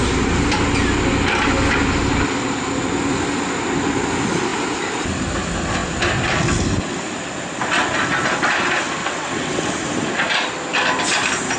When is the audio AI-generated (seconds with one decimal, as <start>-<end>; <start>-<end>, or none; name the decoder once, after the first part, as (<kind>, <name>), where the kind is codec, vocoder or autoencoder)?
9.0-9.7 (vocoder, WaveNeXt)